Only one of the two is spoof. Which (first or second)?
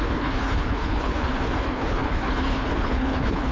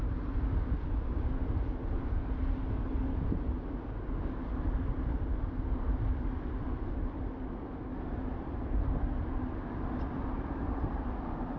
first